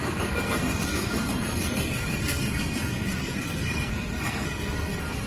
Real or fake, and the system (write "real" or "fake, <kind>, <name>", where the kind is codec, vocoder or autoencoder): fake, codec, SNAC